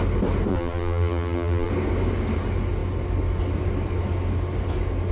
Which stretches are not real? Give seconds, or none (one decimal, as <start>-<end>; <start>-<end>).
0.5-1.7